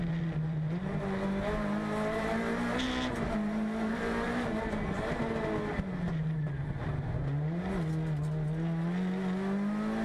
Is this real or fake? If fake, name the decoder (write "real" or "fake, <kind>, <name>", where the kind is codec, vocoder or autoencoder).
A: real